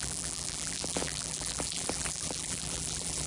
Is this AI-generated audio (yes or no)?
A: yes